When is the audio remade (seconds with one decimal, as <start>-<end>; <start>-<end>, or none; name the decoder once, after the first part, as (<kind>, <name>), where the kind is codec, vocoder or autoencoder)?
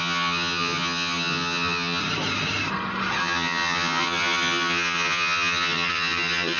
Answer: 0.0-2.0 (vocoder, HiFi-GAN); 3.2-6.6